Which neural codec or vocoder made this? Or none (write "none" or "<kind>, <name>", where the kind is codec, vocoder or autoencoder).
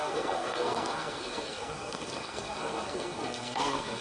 codec, SNAC